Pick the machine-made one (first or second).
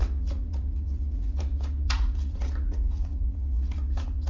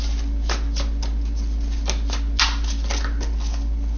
first